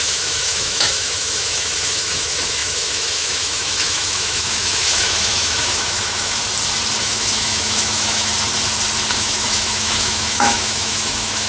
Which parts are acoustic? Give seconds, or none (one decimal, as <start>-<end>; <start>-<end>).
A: 6.4-7.0; 8.3-9.1